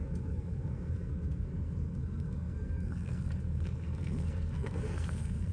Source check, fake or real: fake